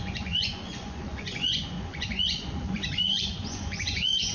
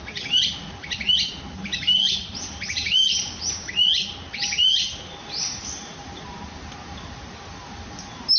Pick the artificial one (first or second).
first